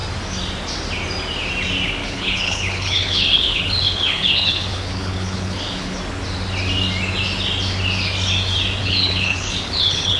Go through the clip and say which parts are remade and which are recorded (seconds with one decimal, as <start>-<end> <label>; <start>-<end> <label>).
0.0-2.0 recorded; 2.0-6.0 remade; 6.0-8.8 recorded; 8.8-10.2 remade